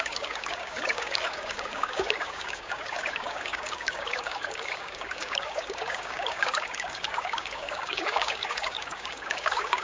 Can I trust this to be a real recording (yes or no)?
no